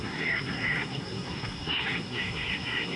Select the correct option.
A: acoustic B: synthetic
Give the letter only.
B